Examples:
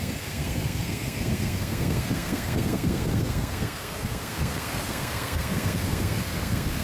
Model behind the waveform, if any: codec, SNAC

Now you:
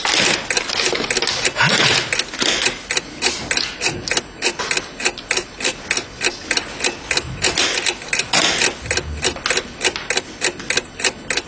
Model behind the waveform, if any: none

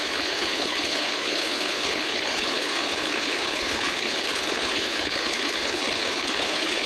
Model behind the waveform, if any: codec, HILCodec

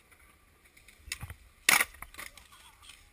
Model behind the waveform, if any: none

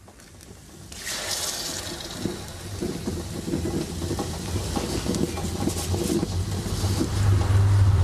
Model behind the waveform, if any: none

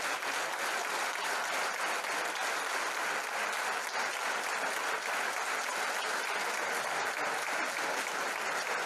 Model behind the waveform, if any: none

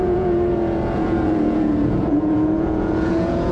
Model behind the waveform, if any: vocoder, Vocos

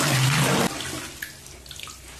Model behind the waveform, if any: none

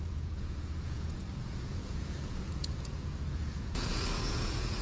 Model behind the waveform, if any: vocoder, Vocos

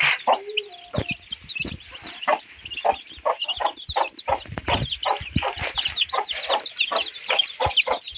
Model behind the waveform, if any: none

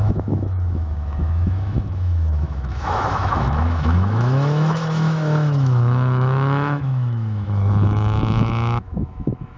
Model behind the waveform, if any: autoencoder, DAC-VAE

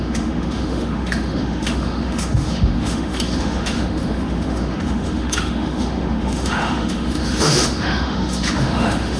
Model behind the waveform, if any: autoencoder, DAC-VAE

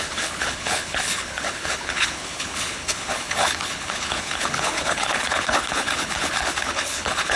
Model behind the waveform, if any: codec, HILCodec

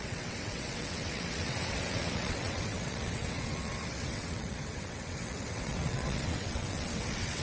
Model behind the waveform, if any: vocoder, WaveNeXt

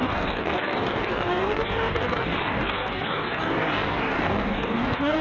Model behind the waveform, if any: codec, DAC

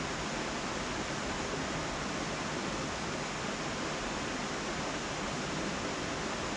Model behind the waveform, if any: none